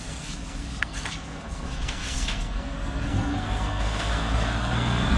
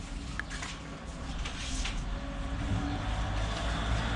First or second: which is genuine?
second